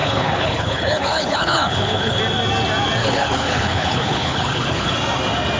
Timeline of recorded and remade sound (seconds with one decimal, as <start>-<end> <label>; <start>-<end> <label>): 0.0-2.2 remade; 2.2-3.0 recorded; 3.0-4.9 remade; 4.9-5.6 recorded